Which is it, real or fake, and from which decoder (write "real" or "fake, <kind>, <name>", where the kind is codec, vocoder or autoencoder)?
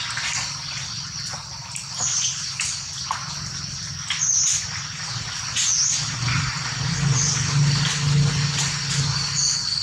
real